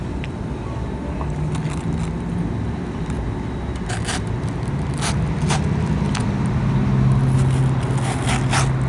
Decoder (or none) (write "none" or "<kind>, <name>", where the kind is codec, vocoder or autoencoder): none